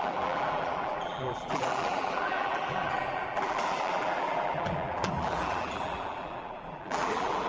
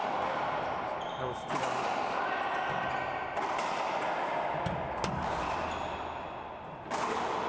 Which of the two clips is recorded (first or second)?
second